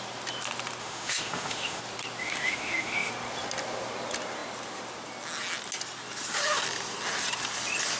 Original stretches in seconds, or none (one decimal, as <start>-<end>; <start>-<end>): 0.0-0.8; 1.8-2.2; 3.1-8.0